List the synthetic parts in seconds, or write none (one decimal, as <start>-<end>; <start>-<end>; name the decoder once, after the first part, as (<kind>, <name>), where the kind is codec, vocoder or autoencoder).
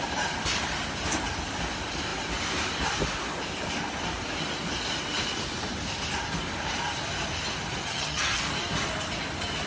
7.8-8.4 (vocoder, HiFi-GAN)